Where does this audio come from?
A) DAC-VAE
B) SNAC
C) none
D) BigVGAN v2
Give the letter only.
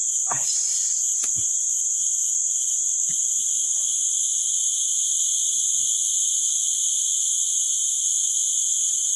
C